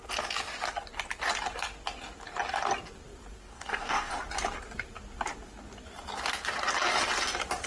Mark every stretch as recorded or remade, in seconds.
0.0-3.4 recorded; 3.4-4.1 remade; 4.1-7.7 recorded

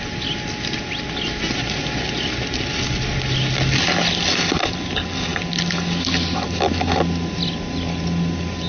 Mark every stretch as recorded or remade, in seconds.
0.0-8.7 recorded

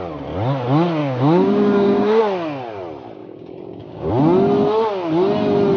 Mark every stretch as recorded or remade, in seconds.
0.0-1.0 recorded; 1.0-2.2 remade; 2.2-3.2 recorded; 3.2-4.1 remade; 4.1-5.8 recorded

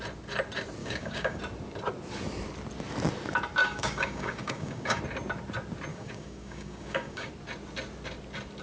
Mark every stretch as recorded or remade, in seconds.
0.0-0.8 recorded; 0.8-1.4 remade; 1.4-3.6 recorded; 3.6-5.0 remade; 5.0-5.9 recorded; 5.9-7.3 remade; 7.3-8.6 recorded